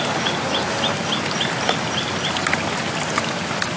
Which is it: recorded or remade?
recorded